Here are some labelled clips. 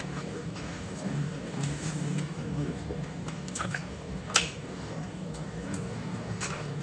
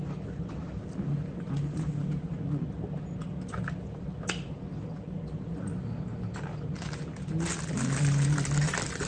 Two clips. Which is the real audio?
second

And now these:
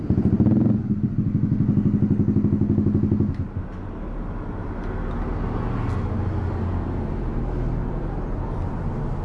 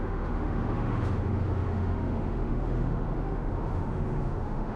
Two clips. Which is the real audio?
first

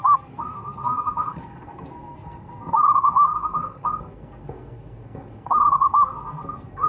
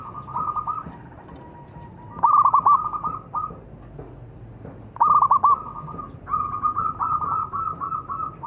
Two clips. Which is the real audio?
second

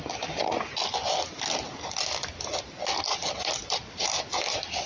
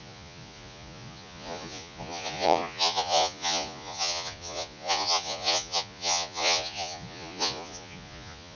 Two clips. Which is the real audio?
first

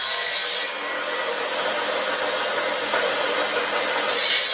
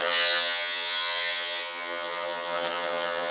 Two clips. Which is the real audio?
first